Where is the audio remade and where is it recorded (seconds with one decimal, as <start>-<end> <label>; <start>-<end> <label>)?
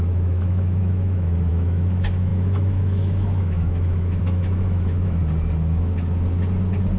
0.0-5.2 remade; 5.2-7.0 recorded